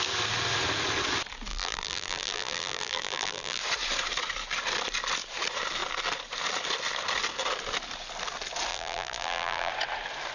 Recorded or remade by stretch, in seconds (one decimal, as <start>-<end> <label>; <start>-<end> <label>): 0.0-1.5 recorded; 1.5-3.6 remade; 3.6-8.7 recorded; 8.7-9.7 remade; 9.7-10.3 recorded